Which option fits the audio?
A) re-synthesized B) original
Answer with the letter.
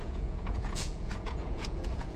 A